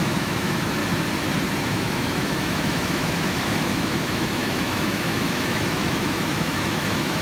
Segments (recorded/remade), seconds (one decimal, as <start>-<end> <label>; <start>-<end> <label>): 0.0-0.8 remade; 0.8-1.6 recorded; 1.6-7.2 remade